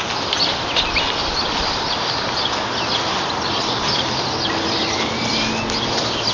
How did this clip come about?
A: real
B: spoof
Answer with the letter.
A